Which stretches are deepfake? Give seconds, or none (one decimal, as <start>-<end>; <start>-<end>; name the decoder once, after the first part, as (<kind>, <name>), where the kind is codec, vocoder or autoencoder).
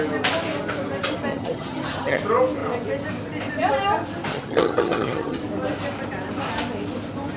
1.3-2.2 (vocoder, HiFi-GAN); 4.3-5.4